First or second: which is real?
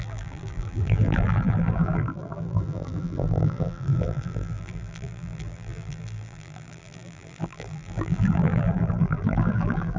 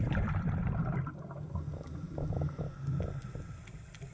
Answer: second